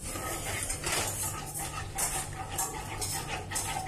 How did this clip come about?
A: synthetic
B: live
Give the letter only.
B